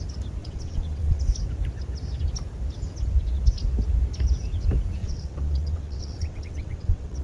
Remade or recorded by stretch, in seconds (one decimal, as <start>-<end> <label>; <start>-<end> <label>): 0.0-0.4 recorded; 0.4-1.2 remade; 1.2-5.0 recorded; 5.0-7.2 remade